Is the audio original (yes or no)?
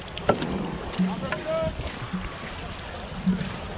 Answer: yes